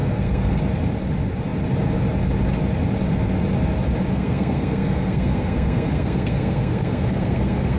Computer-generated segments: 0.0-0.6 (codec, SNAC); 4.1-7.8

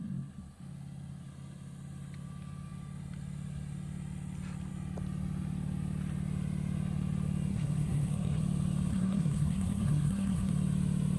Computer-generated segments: 7.5-8.4 (codec, SNAC); 8.9-10.5

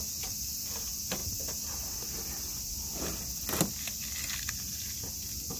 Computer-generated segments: none

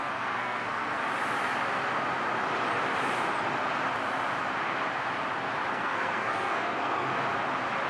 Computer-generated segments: 0.0-1.0 (codec, SNAC); 5.7-7.1

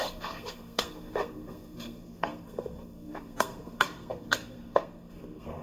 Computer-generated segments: 0.0-5.6 (codec, SNAC)